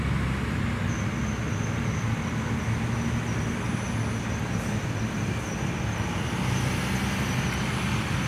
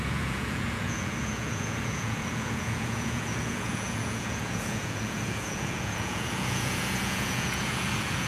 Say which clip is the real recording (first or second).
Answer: first